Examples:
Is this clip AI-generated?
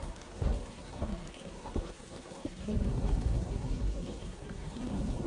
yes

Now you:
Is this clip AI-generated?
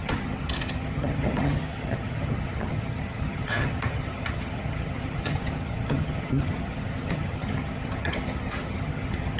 yes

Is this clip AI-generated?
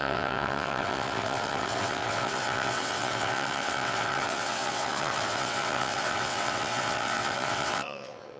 yes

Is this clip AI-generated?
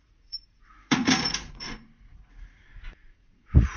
yes